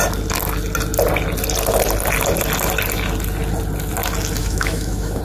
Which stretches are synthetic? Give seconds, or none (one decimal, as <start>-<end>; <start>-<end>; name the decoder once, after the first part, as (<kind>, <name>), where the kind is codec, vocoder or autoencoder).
4.4-5.2 (autoencoder, DAC-VAE)

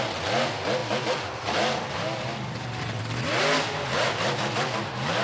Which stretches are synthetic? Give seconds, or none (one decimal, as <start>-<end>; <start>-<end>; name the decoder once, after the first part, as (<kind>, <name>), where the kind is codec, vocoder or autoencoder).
none

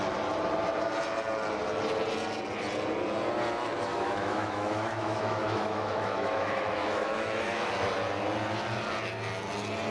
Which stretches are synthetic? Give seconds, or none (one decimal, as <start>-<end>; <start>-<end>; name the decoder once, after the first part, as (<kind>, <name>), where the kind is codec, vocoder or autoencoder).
3.9-7.7 (autoencoder, DAC-VAE)

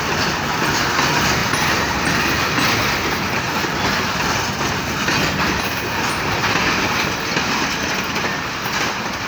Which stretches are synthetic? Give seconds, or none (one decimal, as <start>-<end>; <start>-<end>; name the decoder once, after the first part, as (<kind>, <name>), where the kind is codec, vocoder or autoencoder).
0.0-6.4 (vocoder, BigVGAN v2); 8.9-9.3

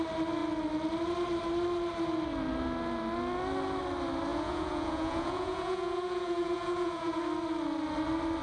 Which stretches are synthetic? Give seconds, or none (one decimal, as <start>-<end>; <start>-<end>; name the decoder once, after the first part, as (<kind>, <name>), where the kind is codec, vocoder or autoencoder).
4.3-7.2 (vocoder, Vocos)